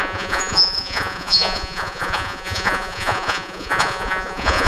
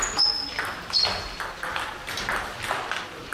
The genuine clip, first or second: second